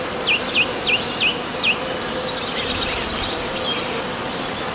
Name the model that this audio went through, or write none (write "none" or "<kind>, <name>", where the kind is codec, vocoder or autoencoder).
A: none